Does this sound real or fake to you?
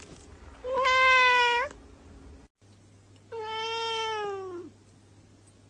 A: real